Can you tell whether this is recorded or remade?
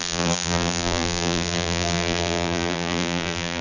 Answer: remade